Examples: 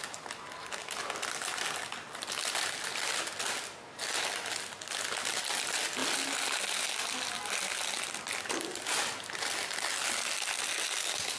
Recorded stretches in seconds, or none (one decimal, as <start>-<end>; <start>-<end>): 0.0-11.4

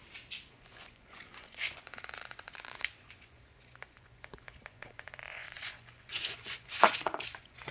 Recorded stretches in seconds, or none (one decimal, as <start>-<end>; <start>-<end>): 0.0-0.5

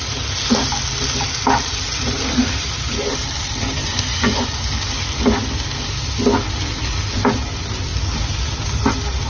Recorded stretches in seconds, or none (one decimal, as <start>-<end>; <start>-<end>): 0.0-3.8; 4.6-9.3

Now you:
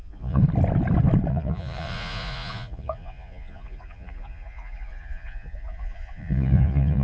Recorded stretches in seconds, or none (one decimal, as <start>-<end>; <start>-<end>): 0.4-1.3